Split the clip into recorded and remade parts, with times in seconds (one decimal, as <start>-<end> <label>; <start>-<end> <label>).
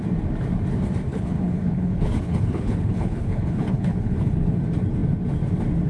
0.0-1.1 recorded; 1.1-4.6 remade; 4.6-5.9 recorded